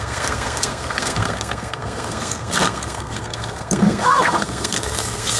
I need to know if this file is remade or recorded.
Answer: remade